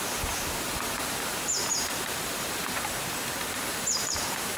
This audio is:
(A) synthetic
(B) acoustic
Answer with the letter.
A